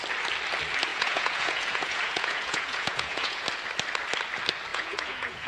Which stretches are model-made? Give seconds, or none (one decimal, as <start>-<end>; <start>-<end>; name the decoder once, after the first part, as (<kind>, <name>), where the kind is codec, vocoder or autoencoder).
0.9-3.4 (vocoder, Vocos); 4.7-5.5